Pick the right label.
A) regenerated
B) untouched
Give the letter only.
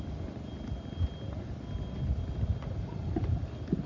B